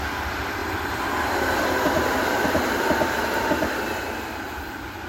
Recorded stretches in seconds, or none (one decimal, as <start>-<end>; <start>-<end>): 0.0-5.1